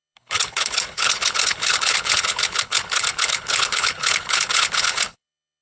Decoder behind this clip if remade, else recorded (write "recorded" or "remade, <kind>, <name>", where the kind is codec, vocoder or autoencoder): remade, codec, HILCodec